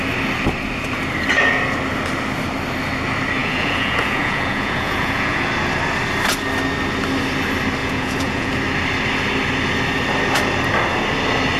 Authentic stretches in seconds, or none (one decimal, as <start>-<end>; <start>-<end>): 0.0-3.4; 5.5-7.8; 8.5-11.6